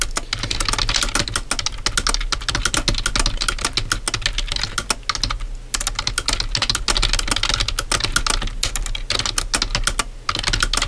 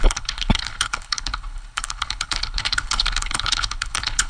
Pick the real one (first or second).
first